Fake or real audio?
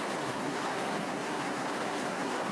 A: fake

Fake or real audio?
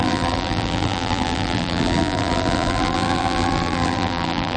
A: fake